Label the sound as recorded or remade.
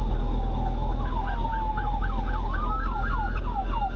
recorded